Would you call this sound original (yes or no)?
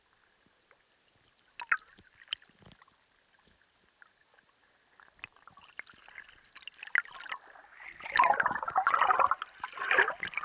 yes